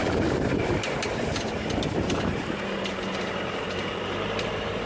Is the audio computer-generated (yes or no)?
no